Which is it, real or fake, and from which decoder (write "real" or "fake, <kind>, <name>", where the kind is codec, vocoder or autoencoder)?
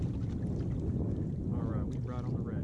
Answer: real